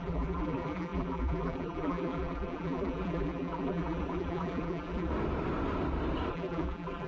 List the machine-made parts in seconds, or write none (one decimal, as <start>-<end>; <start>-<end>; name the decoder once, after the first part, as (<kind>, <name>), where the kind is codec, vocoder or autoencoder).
0.0-5.1 (vocoder, BigVGAN v2); 6.3-7.1